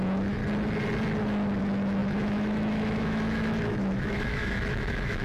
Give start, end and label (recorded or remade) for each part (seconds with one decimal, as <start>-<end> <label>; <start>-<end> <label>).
0.0-0.4 remade; 0.4-1.6 recorded; 1.6-5.2 remade